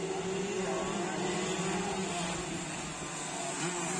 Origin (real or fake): real